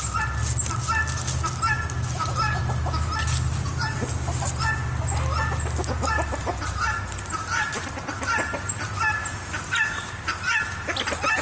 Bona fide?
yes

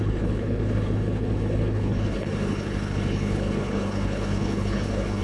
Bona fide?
no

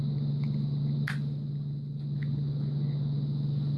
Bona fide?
yes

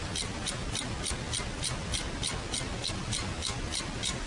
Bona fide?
yes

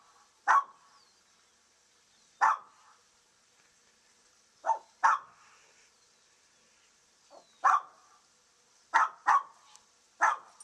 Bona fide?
yes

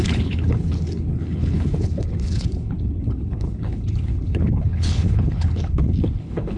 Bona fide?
no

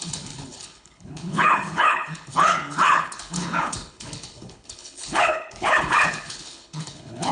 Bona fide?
no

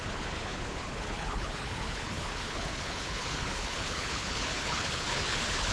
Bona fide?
no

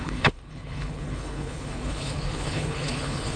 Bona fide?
no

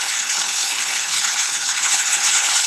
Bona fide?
no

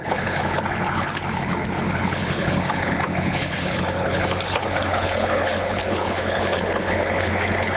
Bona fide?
no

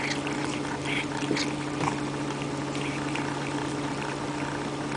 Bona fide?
yes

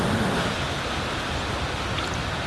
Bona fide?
yes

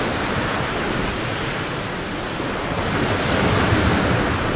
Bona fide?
yes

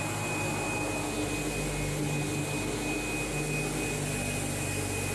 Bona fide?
yes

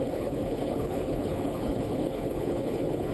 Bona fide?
no